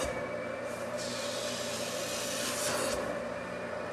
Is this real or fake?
real